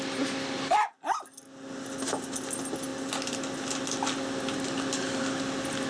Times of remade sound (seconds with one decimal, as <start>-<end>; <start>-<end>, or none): none